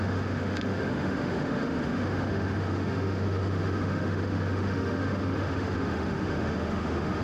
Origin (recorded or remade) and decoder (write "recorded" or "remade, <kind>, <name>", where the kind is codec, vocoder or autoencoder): remade, autoencoder, DAC-VAE